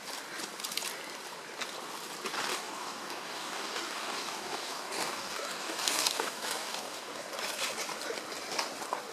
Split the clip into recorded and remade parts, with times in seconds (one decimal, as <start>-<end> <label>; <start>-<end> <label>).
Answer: 0.0-2.5 recorded; 2.5-7.3 remade; 7.3-9.1 recorded